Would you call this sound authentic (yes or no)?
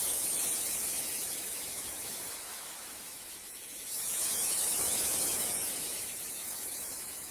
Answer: no